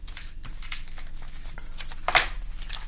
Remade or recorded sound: recorded